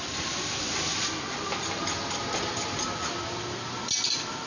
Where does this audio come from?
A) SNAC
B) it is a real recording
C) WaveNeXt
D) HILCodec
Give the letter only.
B